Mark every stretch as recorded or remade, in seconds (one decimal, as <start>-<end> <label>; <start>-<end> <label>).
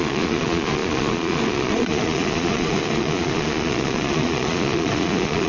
0.0-5.5 remade